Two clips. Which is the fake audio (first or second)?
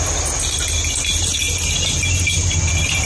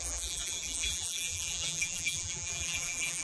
second